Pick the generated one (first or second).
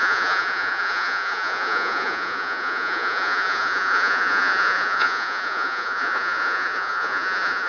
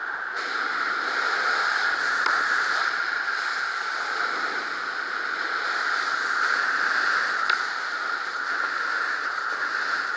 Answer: first